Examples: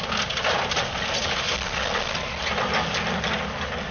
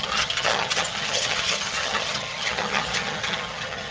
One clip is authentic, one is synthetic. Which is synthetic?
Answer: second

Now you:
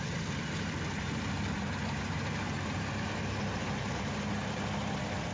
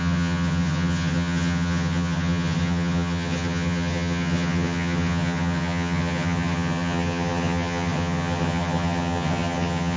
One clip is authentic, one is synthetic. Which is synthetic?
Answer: second